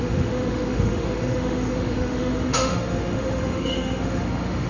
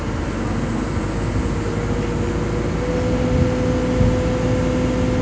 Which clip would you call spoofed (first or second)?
first